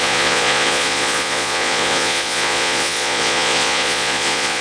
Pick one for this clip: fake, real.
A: fake